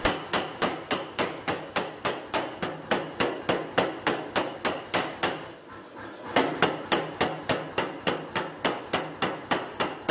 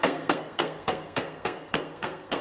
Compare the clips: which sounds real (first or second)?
first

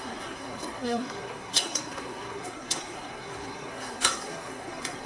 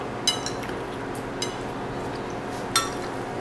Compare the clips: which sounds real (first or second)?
second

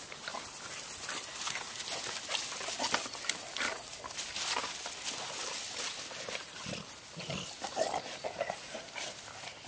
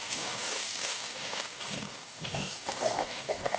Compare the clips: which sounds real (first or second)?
first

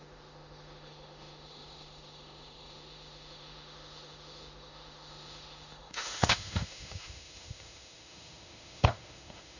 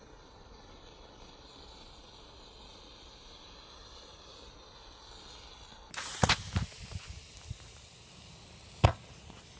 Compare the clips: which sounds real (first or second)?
second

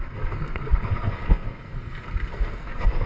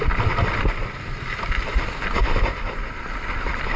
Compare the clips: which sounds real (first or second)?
second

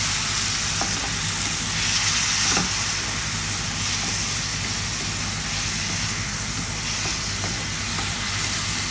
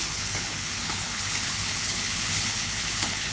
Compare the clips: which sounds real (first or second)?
first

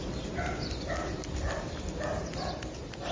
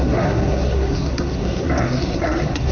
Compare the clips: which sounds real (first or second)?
first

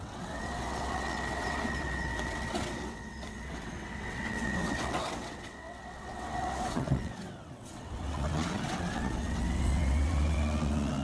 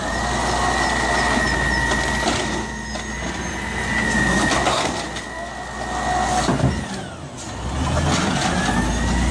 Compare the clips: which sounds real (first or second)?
second